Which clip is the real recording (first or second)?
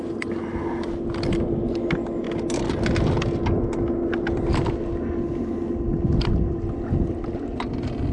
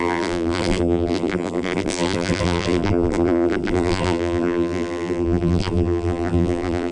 first